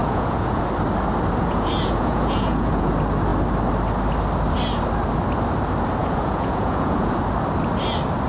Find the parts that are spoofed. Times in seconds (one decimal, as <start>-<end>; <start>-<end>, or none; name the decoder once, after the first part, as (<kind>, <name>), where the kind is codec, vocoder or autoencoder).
0.0-0.6 (vocoder, Vocos); 1.4-2.9; 6.0-7.2